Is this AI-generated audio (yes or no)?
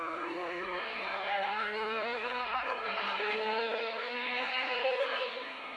yes